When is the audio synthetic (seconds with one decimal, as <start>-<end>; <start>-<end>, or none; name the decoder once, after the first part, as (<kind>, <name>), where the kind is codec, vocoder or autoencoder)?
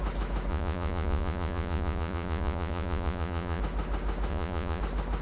0.5-3.6 (vocoder, Vocos); 4.3-4.8